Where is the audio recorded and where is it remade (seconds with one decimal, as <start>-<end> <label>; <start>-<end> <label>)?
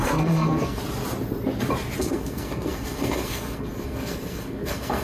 0.0-0.8 remade; 0.8-2.0 recorded; 2.0-5.0 remade